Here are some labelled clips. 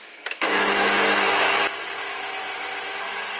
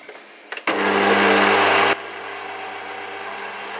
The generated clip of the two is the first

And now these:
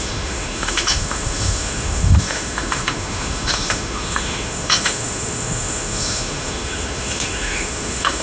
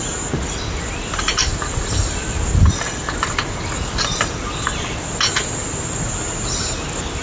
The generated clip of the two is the first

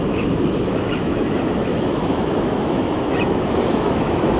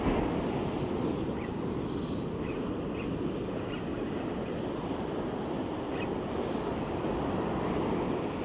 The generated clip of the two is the first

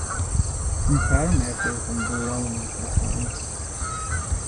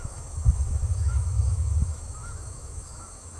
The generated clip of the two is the second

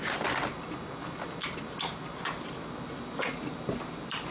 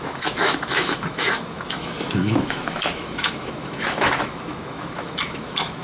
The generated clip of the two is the second